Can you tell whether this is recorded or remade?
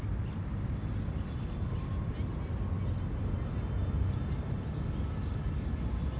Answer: recorded